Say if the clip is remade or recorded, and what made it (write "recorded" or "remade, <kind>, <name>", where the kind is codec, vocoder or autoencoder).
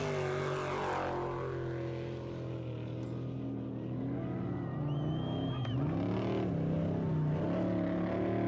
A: recorded